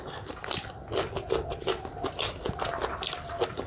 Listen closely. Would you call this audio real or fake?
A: real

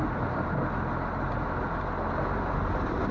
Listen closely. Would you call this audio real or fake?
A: real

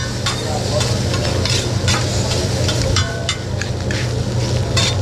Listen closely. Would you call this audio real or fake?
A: real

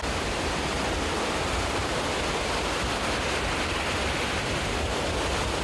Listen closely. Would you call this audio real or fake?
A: real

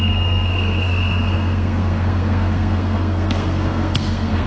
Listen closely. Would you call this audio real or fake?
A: fake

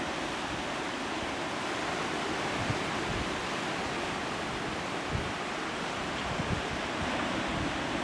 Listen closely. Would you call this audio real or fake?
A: real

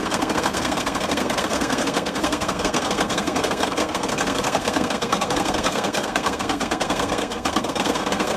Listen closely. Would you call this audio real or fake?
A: fake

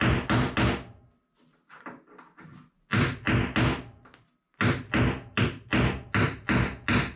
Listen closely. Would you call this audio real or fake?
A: real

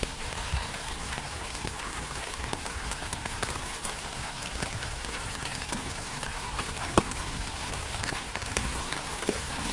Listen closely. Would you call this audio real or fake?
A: fake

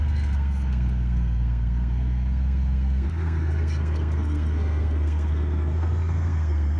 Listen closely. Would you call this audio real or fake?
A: fake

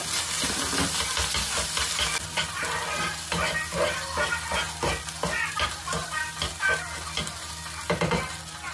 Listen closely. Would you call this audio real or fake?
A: real